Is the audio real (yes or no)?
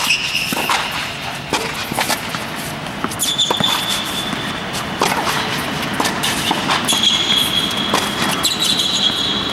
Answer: yes